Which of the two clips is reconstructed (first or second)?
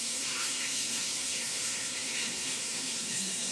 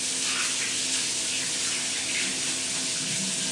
first